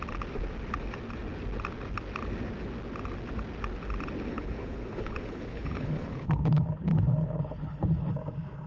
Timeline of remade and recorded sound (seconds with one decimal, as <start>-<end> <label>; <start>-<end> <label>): 0.0-4.3 recorded; 4.3-8.1 remade; 8.1-8.7 recorded